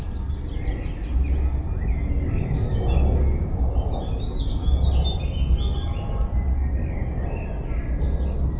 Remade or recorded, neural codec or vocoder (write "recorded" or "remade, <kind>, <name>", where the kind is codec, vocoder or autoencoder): recorded